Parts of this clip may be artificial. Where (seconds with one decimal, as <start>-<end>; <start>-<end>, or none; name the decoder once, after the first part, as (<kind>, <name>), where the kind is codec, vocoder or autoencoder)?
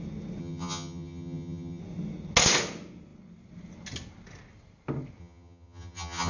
0.4-1.8 (vocoder, HiFi-GAN); 5.2-6.3